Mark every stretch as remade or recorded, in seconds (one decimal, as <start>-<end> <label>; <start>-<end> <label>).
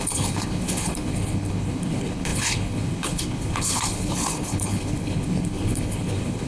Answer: 0.0-6.5 remade